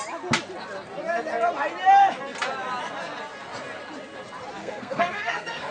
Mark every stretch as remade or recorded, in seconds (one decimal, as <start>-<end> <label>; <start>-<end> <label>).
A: 0.0-4.6 recorded; 4.6-5.7 remade